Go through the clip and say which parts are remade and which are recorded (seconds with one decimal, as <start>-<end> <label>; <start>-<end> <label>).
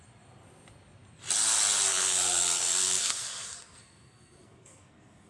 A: 0.0-1.9 recorded; 1.9-5.3 remade